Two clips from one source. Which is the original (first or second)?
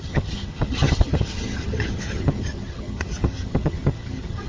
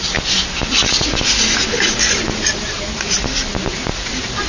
second